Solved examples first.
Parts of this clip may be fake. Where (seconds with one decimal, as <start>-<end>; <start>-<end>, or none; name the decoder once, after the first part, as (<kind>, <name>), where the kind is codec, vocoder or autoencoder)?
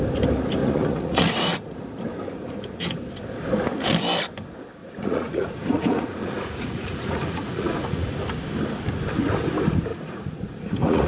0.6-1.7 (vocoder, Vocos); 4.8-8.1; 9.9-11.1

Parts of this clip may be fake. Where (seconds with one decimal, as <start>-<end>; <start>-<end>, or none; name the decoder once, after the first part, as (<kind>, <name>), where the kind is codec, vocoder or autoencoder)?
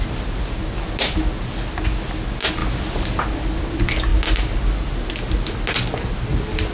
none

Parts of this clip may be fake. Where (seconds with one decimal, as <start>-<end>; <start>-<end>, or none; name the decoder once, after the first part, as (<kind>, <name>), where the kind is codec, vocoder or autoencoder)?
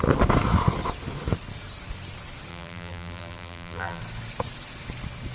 2.5-4.0 (vocoder, BigVGAN v2)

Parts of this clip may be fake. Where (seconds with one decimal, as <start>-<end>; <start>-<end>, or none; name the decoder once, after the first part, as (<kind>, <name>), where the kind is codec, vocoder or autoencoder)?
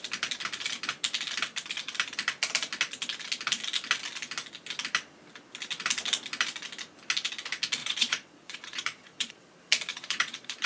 7.8-9.3 (vocoder, Vocos); 9.9-10.7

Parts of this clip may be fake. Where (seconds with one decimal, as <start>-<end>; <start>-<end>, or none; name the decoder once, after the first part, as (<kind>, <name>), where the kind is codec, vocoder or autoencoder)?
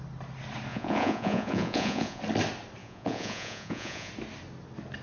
0.7-2.2 (vocoder, Vocos); 2.8-4.1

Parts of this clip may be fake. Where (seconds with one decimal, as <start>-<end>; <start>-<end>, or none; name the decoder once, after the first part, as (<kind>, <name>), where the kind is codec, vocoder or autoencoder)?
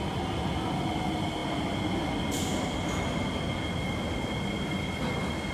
none